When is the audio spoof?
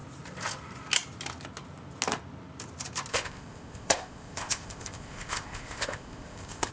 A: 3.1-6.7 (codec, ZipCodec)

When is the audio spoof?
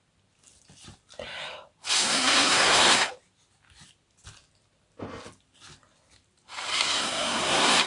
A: 2.0-3.1 (codec, SNAC); 6.7-7.9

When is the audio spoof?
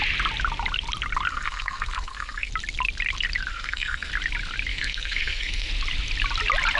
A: 1.3-2.5 (codec, SNAC); 3.5-4.1; 4.7-5.7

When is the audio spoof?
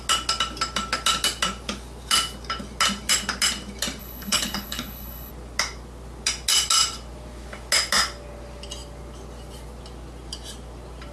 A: 4.0-5.3 (codec, HILCodec)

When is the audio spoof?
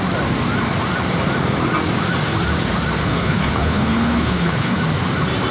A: 3.0-4.8 (codec, HILCodec)